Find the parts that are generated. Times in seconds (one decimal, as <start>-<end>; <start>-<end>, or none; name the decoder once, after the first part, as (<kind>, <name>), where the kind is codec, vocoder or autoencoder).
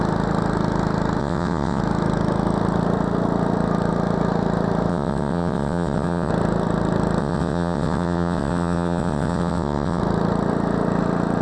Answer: 1.2-1.8 (vocoder, WaveNeXt); 4.9-6.3; 7.2-10.0